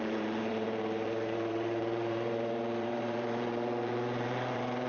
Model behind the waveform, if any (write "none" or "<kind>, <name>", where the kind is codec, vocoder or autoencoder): vocoder, BigVGAN v2